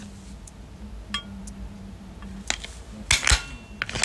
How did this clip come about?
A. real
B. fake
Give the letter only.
A